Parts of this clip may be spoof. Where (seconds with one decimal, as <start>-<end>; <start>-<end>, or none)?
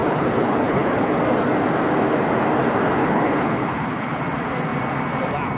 0.0-1.2; 3.0-4.2